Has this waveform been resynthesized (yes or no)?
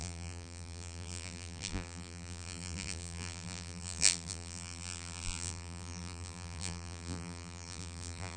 yes